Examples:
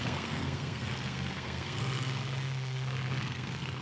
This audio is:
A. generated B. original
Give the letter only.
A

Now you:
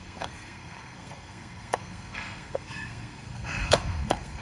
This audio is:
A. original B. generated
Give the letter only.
B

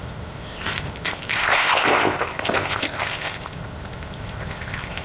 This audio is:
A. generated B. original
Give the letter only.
A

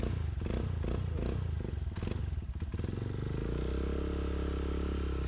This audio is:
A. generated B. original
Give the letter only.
B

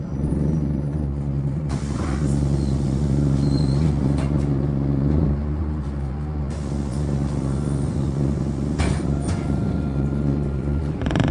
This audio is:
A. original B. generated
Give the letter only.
B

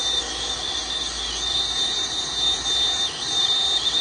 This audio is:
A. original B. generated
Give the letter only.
A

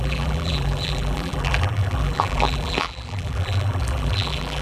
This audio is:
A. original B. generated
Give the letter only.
B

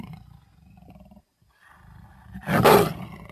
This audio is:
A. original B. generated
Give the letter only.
A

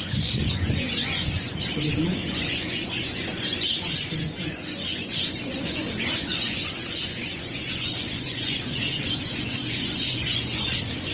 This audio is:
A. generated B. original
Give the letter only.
A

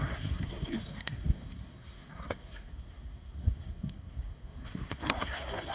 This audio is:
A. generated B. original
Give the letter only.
A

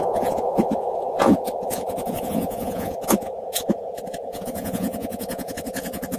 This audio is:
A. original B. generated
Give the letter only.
B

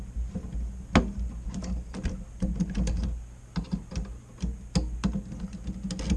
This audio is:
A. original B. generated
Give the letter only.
A